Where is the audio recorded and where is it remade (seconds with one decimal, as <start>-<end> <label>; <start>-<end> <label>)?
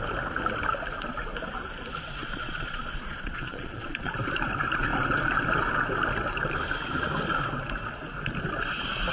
0.0-2.2 recorded; 2.2-4.1 remade; 4.1-9.1 recorded